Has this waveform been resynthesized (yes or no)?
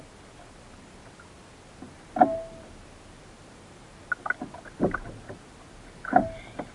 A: no